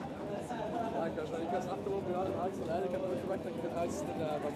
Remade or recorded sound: remade